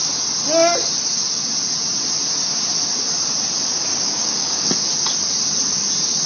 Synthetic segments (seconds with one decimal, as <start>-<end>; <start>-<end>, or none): 3.9-4.7